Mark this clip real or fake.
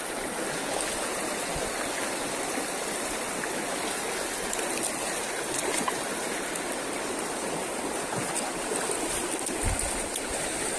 real